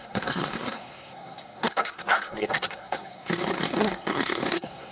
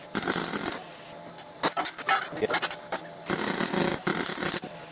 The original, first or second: second